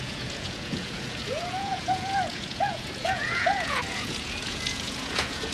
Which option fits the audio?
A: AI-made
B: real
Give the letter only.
A